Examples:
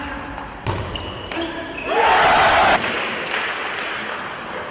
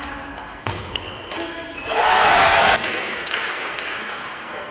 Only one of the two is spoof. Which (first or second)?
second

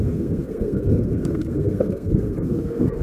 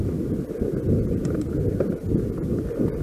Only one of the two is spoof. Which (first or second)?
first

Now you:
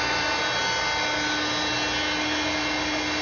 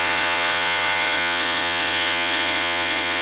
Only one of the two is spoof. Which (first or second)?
second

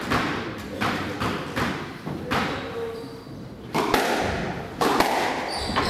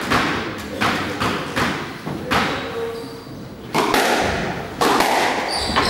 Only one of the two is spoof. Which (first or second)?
first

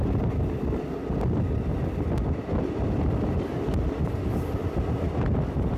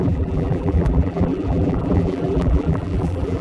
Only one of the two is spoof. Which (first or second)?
second